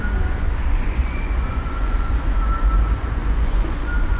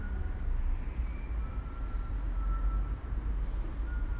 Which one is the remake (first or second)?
first